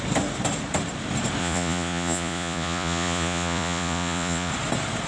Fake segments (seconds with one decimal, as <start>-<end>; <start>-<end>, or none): 1.4-4.5

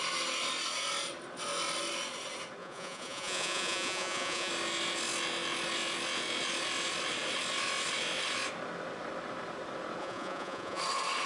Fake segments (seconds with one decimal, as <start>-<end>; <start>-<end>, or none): 2.6-4.5; 10.0-10.8

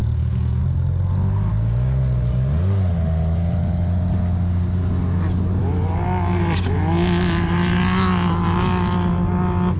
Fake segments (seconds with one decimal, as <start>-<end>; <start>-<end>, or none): 0.0-0.6

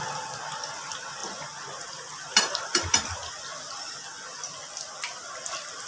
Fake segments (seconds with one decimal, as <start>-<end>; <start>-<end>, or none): none

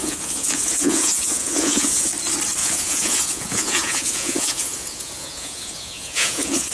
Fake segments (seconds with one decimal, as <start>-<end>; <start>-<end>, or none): 0.0-2.1; 2.6-6.7

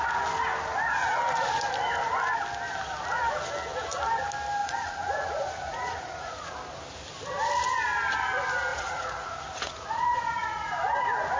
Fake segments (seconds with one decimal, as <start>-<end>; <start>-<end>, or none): 4.6-6.5; 8.7-10.8

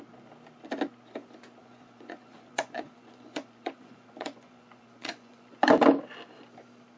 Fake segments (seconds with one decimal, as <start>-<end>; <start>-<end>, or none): 1.6-5.7